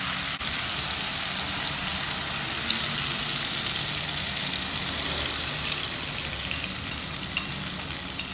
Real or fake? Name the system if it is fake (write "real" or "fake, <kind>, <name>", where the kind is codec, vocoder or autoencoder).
real